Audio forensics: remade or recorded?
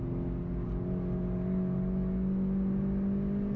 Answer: recorded